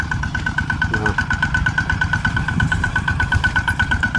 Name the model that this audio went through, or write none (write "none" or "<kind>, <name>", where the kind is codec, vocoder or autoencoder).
vocoder, BigVGAN v2